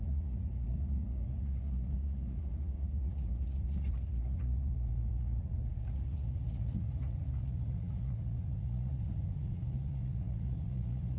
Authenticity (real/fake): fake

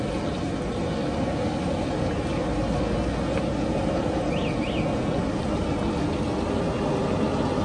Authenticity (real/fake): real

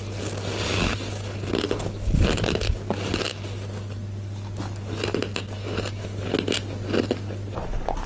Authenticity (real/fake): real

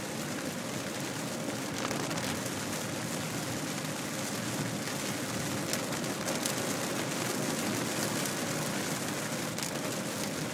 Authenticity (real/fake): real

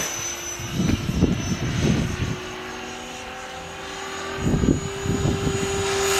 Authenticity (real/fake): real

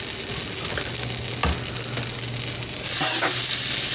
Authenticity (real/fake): real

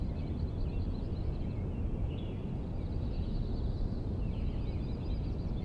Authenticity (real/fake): real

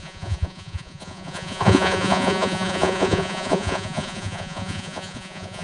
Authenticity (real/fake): fake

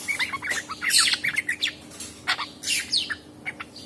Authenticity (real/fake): real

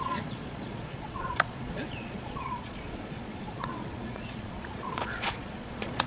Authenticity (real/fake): fake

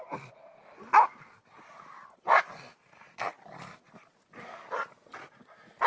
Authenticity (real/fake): real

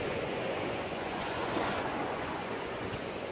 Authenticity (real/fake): fake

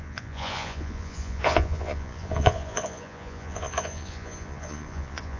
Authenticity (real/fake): fake